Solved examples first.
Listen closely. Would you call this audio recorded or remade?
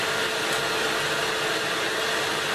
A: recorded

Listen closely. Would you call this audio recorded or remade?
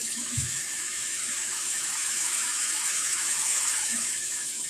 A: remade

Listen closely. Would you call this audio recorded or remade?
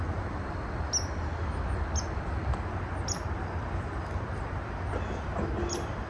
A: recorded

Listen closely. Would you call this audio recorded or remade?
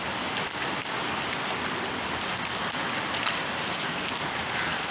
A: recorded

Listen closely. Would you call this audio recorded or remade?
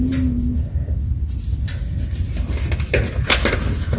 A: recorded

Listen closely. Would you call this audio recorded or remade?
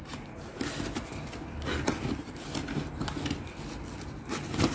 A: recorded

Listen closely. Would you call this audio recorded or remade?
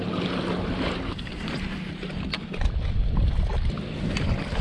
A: recorded